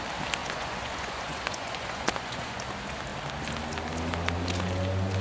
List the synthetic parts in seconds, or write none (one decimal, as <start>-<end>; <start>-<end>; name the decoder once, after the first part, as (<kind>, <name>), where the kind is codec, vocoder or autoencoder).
0.4-2.6 (vocoder, Vocos)